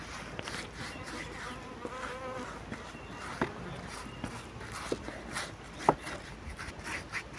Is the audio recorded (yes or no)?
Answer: yes